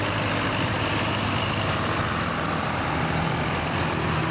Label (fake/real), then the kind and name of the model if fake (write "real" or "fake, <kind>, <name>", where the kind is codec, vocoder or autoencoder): fake, vocoder, BigVGAN v2